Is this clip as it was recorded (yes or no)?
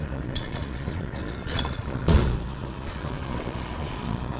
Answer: no